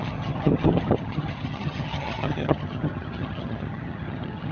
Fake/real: fake